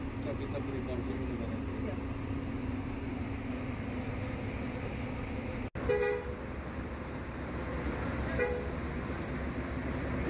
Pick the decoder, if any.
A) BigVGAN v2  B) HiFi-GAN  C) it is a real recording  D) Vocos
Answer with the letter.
C